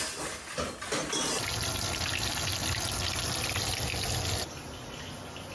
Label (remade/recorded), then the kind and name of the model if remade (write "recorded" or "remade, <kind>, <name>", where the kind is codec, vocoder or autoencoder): recorded